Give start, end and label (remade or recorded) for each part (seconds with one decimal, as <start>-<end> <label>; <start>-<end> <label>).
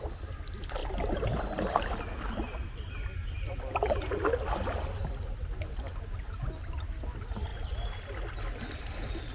0.0-9.3 recorded